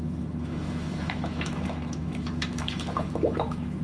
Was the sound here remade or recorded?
remade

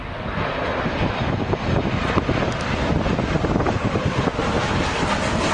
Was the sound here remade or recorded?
recorded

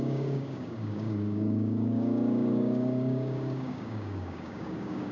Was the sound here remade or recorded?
remade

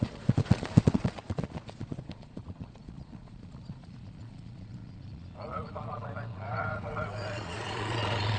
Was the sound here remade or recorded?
remade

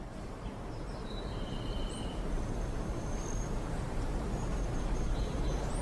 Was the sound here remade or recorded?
remade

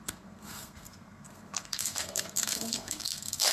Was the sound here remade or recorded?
remade